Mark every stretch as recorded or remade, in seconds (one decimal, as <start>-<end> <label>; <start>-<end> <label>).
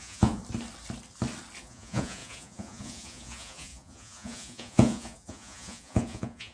0.0-0.4 remade; 0.4-1.6 recorded; 1.6-6.5 remade